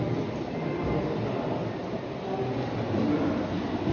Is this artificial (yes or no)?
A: no